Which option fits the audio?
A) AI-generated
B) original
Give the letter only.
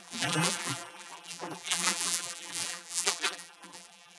A